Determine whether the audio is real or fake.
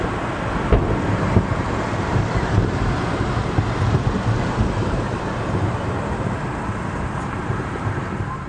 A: fake